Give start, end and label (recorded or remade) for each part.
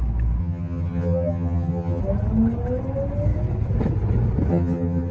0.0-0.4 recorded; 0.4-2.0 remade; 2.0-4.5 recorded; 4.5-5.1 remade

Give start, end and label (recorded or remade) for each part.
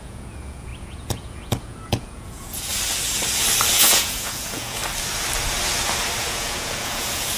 0.0-2.7 remade; 2.7-3.7 recorded; 3.7-4.8 remade; 4.8-6.2 recorded; 6.2-7.4 remade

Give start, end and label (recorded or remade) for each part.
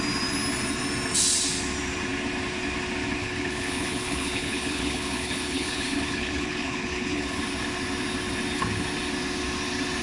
0.0-3.2 recorded; 3.2-7.4 remade; 7.4-10.0 recorded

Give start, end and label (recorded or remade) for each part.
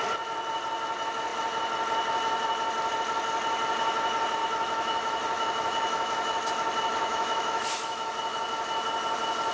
0.0-4.4 recorded; 4.4-6.5 remade; 6.5-6.9 recorded; 6.9-8.4 remade; 8.4-9.5 recorded